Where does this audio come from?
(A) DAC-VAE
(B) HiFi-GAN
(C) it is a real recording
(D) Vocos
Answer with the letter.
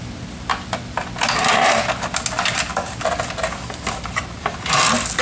C